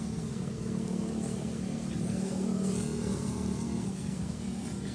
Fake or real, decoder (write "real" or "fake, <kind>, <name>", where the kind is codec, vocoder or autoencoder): fake, codec, SNAC